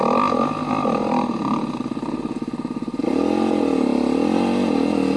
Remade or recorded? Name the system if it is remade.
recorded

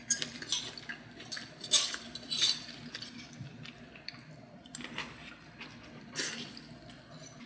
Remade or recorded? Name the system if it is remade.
recorded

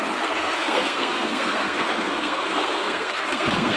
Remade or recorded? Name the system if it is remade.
remade, codec, SNAC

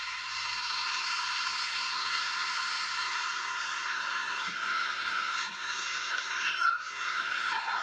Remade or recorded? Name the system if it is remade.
remade, codec, SNAC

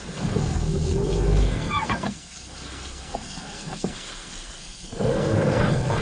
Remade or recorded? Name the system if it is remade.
remade, codec, SNAC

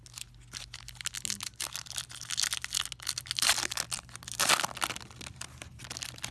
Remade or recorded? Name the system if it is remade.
recorded